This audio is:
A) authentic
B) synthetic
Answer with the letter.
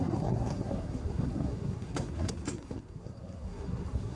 B